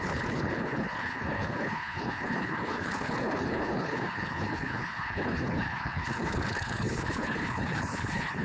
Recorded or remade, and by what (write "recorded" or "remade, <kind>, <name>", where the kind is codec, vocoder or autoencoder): remade, codec, HILCodec